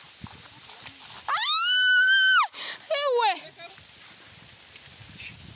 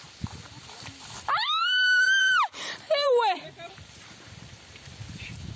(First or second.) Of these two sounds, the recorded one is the first